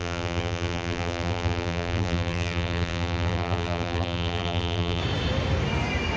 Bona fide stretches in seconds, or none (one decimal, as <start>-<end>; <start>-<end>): 5.0-6.2